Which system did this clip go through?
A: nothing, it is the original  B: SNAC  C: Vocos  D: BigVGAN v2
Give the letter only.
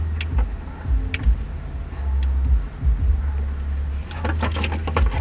A